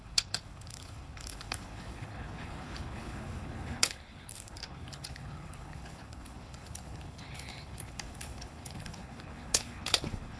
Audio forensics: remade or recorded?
remade